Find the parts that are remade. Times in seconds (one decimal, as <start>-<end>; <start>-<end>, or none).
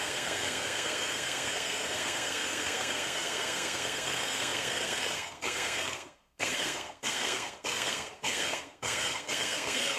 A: 0.0-10.0